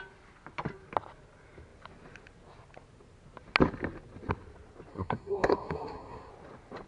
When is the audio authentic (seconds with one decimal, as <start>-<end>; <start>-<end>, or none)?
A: 0.0-4.9; 6.3-6.9